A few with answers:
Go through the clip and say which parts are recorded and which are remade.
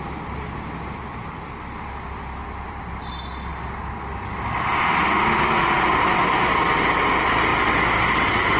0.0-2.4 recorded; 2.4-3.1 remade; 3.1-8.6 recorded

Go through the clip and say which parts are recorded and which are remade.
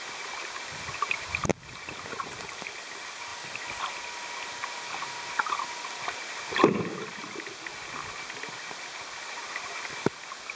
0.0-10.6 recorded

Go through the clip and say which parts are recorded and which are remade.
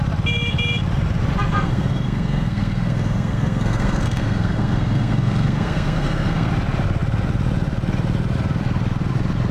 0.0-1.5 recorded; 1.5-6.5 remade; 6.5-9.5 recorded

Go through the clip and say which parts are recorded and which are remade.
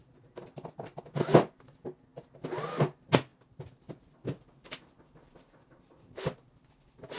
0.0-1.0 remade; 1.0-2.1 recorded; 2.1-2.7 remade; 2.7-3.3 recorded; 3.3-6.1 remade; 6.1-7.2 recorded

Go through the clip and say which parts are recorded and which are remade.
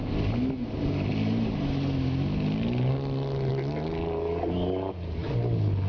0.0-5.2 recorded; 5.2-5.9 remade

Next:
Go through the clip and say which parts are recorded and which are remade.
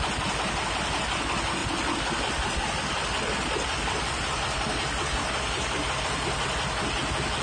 0.0-1.6 recorded; 1.6-6.0 remade; 6.0-7.4 recorded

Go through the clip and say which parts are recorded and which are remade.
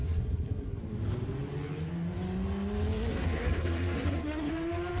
0.0-0.8 remade; 0.8-3.1 recorded; 3.1-4.5 remade; 4.5-5.0 recorded